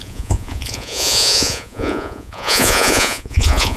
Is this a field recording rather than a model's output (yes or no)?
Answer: no